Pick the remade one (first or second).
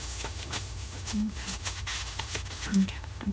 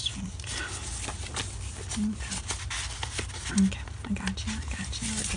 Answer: first